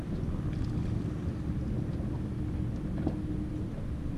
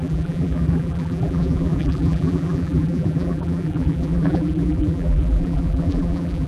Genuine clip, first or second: first